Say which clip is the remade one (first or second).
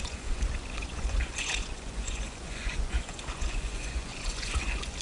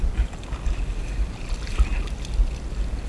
first